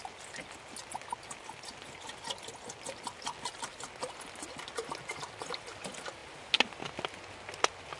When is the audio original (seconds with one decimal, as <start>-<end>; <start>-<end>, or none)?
0.0-8.0